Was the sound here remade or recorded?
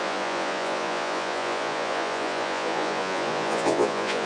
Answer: remade